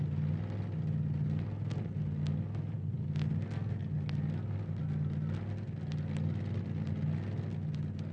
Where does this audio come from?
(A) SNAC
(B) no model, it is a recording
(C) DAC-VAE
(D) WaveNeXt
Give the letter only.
B